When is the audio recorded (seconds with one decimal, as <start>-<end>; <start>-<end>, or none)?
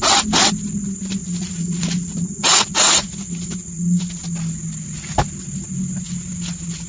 0.0-1.2; 4.0-6.9